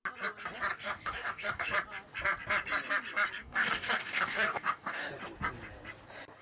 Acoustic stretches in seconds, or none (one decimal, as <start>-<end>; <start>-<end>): 0.0-0.7; 1.7-3.4; 5.1-6.4